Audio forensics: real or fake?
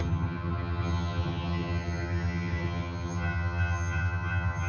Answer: fake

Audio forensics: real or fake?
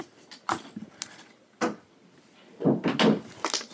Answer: real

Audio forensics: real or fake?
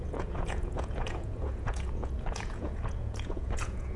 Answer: fake